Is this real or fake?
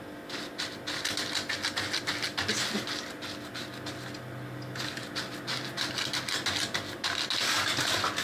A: real